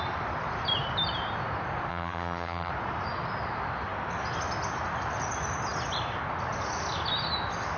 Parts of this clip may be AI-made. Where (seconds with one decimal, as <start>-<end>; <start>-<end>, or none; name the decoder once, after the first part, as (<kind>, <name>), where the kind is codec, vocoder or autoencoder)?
1.9-2.7 (vocoder, HiFi-GAN)

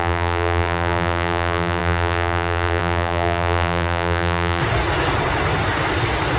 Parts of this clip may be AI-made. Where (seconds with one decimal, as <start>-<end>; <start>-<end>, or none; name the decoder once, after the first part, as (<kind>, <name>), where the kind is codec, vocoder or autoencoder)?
0.0-4.6 (vocoder, BigVGAN v2)